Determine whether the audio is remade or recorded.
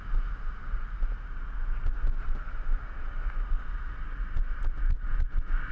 recorded